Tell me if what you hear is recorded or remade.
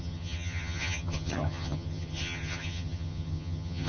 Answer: remade